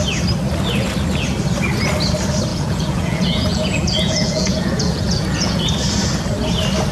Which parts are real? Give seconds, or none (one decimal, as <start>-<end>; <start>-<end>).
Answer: 0.0-2.5; 5.6-6.9